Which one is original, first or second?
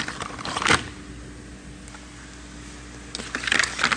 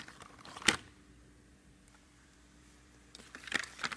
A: first